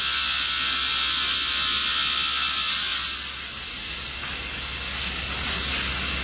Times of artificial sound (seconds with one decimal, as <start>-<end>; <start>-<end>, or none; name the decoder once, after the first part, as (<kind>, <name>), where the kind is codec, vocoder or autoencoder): none